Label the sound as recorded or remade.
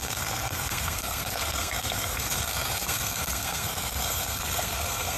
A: remade